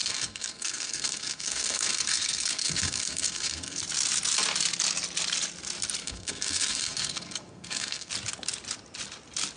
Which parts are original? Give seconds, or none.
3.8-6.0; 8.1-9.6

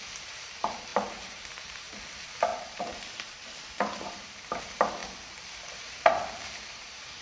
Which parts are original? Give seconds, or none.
5.0-5.6